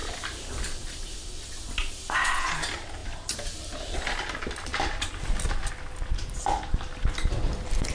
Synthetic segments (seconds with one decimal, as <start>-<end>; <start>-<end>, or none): 0.0-1.6; 3.0-6.4

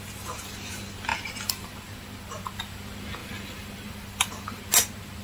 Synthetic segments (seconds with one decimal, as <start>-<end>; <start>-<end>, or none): 3.2-4.6

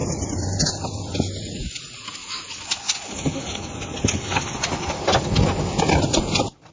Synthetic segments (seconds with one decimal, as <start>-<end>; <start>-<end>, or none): none

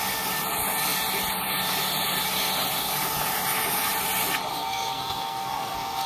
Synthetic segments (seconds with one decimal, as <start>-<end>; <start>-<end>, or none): 4.5-6.1